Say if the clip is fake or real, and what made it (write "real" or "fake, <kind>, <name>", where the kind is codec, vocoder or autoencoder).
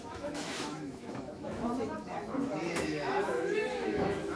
fake, autoencoder, DAC-VAE